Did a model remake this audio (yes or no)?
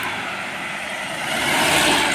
no